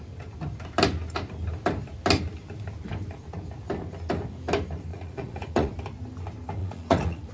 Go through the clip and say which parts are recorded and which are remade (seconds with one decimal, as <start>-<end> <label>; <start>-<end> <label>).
0.0-4.9 recorded; 4.9-5.7 remade; 5.7-6.6 recorded; 6.6-7.3 remade